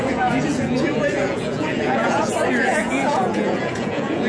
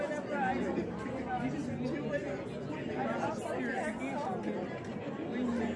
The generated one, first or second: first